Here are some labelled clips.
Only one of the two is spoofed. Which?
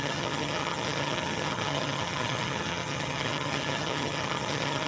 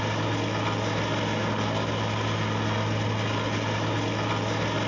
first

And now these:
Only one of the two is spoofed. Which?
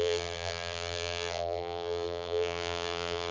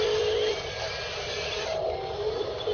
first